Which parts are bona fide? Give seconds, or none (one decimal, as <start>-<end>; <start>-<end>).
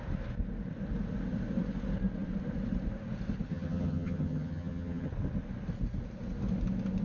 0.0-3.5; 5.1-7.0